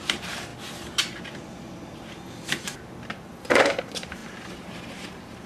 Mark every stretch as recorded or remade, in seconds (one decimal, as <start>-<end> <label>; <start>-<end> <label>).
0.0-0.5 remade; 0.5-3.8 recorded; 3.8-5.5 remade